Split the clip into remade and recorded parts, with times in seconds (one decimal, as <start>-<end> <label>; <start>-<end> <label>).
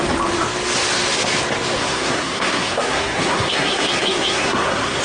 0.0-1.8 recorded; 1.8-5.0 remade